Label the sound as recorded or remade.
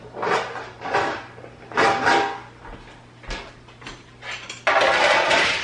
recorded